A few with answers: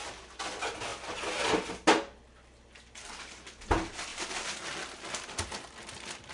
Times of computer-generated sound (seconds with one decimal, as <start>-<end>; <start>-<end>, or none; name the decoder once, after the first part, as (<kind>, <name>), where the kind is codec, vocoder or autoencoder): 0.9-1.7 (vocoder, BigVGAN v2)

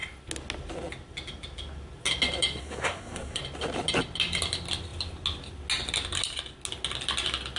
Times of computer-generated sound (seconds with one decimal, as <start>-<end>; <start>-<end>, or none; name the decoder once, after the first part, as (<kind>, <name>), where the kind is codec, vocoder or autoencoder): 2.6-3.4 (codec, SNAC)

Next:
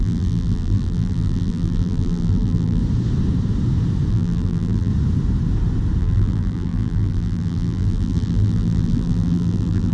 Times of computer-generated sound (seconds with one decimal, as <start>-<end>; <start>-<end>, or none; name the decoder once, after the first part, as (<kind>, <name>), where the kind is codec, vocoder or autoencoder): 0.0-2.8 (vocoder, BigVGAN v2); 4.1-4.9; 6.0-9.9

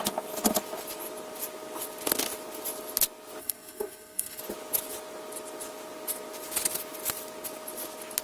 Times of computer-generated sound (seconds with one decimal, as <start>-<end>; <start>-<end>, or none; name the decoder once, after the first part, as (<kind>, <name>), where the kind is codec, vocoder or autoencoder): 3.4-4.4 (codec, SNAC)